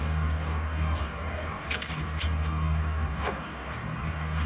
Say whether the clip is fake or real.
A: fake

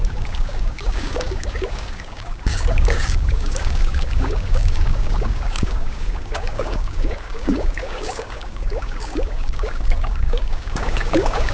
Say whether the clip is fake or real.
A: fake